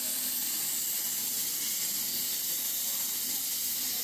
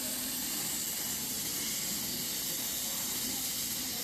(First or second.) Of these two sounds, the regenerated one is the second